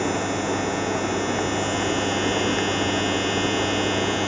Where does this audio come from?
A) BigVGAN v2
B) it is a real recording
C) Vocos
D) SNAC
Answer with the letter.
B